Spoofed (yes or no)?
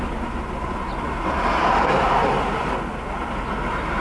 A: no